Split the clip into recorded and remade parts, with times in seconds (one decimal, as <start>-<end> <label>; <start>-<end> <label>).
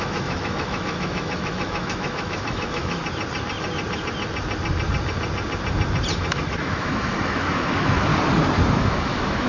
0.0-3.0 remade; 3.0-6.3 recorded; 6.3-8.1 remade; 8.1-8.7 recorded; 8.7-9.5 remade